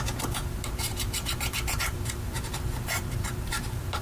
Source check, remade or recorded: remade